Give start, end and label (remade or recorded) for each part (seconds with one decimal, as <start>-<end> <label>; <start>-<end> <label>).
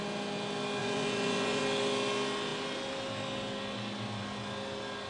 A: 0.0-0.8 recorded; 0.8-1.6 remade; 1.6-5.1 recorded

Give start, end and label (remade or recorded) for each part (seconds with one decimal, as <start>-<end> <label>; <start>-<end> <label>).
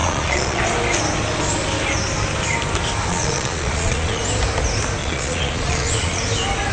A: 0.0-0.6 remade; 0.6-3.1 recorded; 3.1-4.2 remade; 4.2-5.0 recorded; 5.0-6.2 remade; 6.2-6.7 recorded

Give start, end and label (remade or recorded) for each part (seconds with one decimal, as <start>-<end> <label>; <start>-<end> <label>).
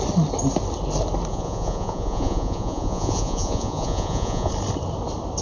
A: 0.0-1.3 recorded; 1.3-4.5 remade; 4.5-5.4 recorded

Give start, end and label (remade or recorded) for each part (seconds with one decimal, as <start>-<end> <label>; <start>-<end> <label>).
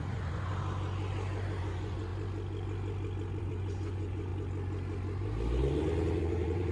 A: 0.0-0.5 remade; 0.5-1.6 recorded; 1.6-2.1 remade; 2.1-3.4 recorded; 3.4-4.3 remade; 4.3-6.2 recorded; 6.2-6.7 remade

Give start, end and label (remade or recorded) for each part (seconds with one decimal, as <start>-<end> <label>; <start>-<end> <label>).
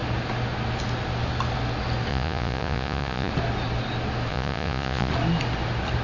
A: 0.0-2.1 recorded; 2.1-3.3 remade; 3.3-4.3 recorded; 4.3-5.1 remade; 5.1-6.0 recorded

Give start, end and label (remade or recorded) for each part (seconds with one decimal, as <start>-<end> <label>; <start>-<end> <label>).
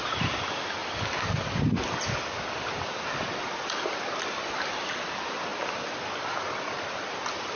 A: 0.0-7.6 recorded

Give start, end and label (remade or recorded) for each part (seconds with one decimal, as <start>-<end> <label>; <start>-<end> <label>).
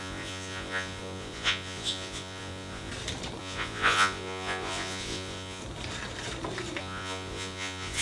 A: 0.0-2.9 remade; 2.9-3.4 recorded; 3.4-5.6 remade; 5.6-6.8 recorded; 6.8-8.0 remade